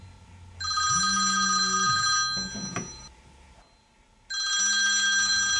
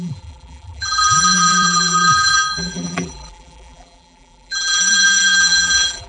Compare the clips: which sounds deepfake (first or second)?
second